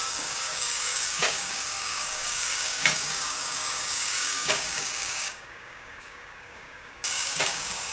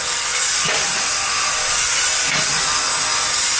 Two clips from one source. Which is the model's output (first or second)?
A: first